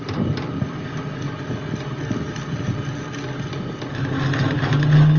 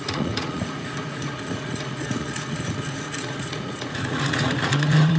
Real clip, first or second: first